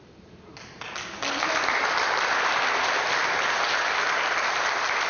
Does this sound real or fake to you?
real